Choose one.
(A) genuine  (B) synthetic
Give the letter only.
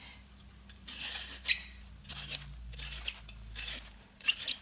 A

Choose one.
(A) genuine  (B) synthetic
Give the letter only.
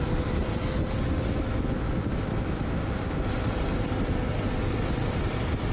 A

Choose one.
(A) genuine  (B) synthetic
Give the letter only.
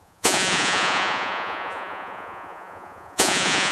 B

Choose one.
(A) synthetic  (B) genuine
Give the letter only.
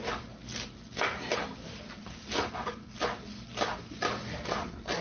B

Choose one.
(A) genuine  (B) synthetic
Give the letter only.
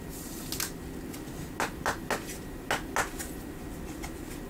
A